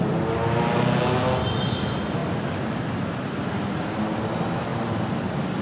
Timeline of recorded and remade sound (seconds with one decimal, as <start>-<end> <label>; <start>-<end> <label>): 0.0-5.6 recorded

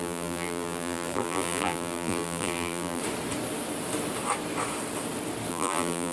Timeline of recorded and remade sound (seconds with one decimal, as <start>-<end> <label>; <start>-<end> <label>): 0.0-3.0 remade; 3.0-5.5 recorded; 5.5-6.1 remade